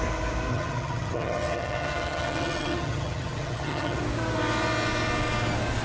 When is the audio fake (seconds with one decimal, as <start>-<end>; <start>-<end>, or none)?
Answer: 0.5-4.0